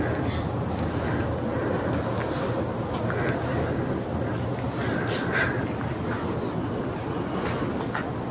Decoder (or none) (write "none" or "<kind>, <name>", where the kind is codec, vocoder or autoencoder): none